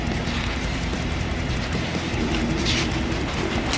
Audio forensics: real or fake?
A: real